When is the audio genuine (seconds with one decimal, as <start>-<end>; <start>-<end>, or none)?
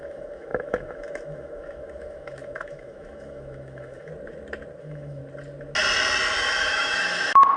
4.1-4.8; 5.2-6.7